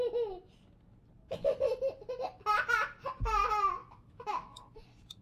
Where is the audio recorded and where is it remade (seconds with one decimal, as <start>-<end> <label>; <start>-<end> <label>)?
0.0-3.8 recorded; 3.8-4.8 remade; 4.8-5.2 recorded